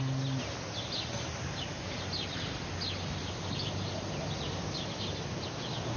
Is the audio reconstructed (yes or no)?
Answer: yes